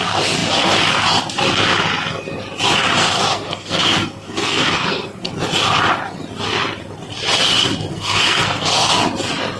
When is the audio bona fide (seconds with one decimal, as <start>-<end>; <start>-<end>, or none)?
0.0-3.0; 5.3-7.9; 8.9-9.6